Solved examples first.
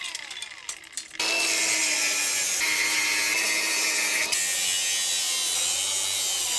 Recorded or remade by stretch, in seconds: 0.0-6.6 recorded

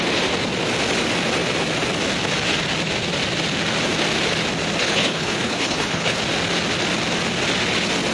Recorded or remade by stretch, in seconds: 0.0-4.8 recorded; 4.8-6.2 remade; 6.2-8.1 recorded

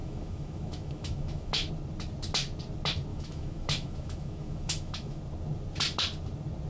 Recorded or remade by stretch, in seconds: 0.0-1.7 remade; 1.7-3.1 recorded; 3.1-5.2 remade; 5.2-6.7 recorded

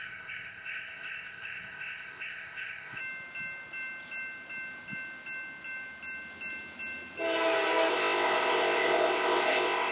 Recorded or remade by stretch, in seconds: 0.0-3.0 remade; 3.0-7.9 recorded; 7.9-9.9 remade

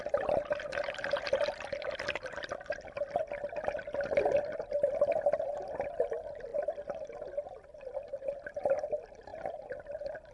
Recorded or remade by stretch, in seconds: 0.0-10.3 recorded

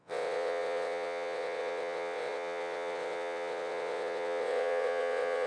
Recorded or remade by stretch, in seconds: 0.0-5.5 remade

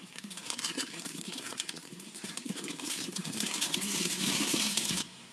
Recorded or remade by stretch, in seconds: 0.0-5.3 remade

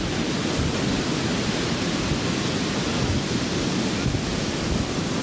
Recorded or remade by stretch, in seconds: 0.0-1.3 recorded; 1.3-2.1 remade; 2.1-5.2 recorded